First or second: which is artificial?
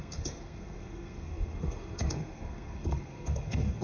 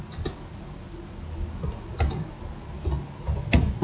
first